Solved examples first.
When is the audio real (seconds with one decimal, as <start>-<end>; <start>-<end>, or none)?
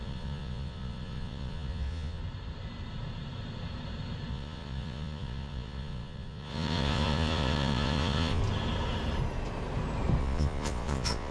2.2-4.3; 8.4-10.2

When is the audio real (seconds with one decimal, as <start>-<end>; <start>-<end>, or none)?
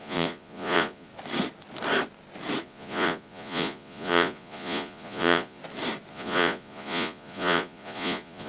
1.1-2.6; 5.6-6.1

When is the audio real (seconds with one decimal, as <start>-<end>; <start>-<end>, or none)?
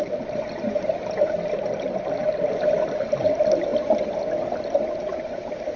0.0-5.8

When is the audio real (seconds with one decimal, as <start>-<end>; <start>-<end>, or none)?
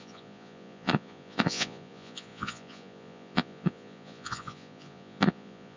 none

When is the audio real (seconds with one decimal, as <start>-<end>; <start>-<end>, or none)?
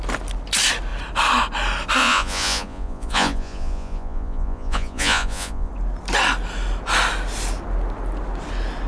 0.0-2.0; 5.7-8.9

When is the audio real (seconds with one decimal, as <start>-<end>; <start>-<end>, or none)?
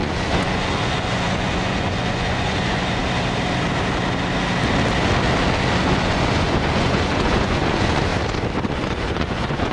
3.0-5.8; 8.1-8.6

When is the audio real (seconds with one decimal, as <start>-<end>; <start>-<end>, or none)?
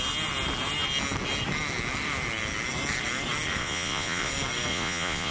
0.0-3.6; 4.3-4.7